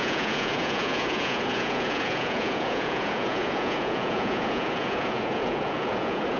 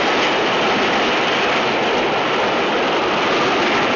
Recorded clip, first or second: second